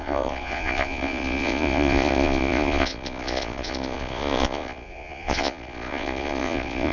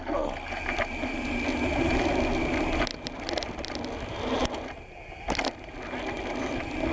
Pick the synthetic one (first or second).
first